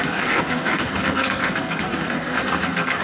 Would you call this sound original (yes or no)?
no